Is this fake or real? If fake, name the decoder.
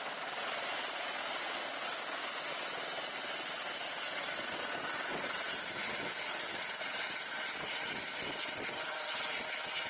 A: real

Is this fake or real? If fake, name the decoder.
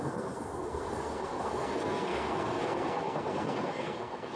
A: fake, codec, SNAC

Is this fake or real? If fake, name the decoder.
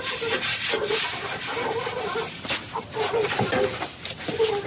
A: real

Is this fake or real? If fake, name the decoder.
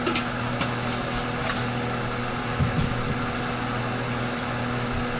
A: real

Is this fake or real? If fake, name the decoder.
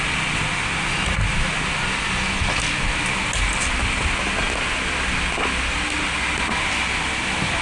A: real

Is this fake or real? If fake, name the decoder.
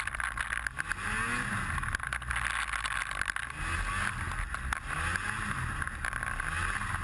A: real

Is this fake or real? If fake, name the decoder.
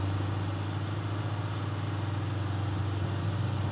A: real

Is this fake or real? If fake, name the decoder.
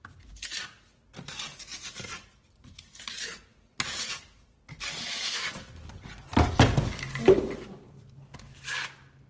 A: real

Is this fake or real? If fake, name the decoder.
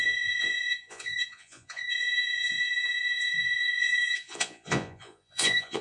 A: fake, vocoder, Vocos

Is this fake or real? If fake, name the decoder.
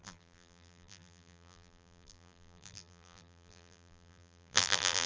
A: fake, vocoder, BigVGAN v2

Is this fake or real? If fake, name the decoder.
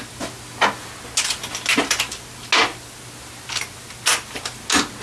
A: real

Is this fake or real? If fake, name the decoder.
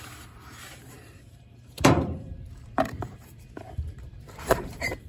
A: fake, vocoder, BigVGAN v2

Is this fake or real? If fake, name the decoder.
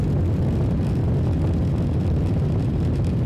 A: real